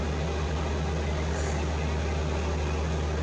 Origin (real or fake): real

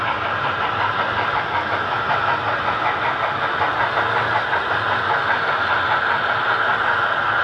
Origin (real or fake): real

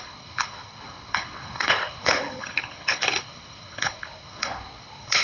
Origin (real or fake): fake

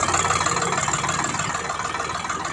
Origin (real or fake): real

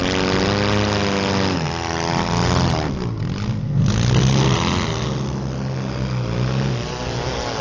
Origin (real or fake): real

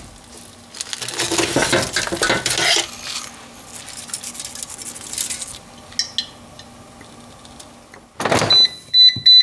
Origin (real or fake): real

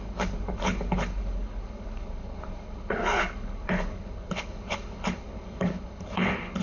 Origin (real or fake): fake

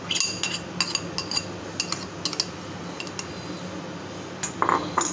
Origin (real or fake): real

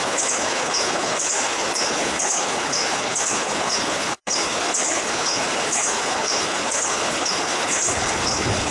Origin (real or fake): fake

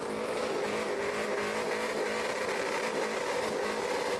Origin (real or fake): real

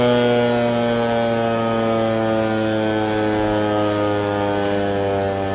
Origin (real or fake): real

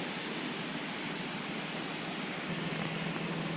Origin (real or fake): real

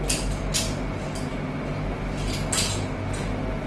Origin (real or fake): real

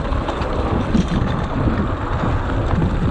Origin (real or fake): real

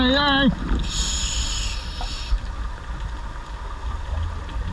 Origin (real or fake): real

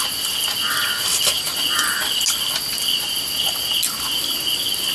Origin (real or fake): real